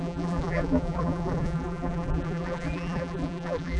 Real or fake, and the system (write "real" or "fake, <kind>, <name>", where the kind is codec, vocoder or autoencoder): fake, vocoder, BigVGAN v2